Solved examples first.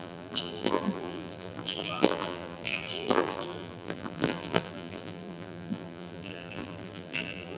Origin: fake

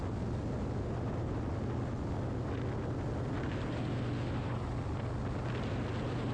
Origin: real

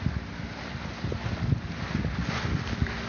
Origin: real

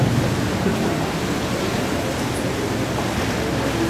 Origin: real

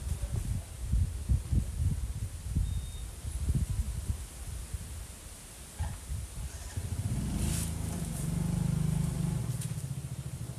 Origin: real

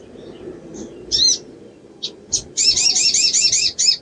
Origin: fake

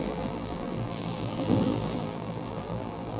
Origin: fake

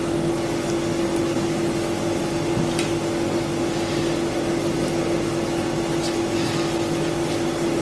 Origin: real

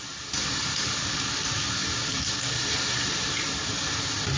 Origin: real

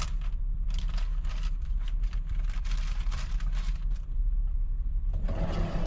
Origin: fake